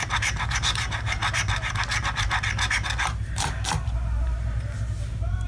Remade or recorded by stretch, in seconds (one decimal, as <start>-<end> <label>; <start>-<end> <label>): 0.0-1.2 remade; 1.2-3.0 recorded; 3.0-5.5 remade